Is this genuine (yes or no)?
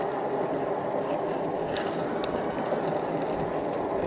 yes